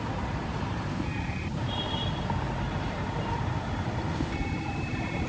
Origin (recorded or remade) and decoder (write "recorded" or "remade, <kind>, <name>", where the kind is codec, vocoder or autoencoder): remade, vocoder, BigVGAN v2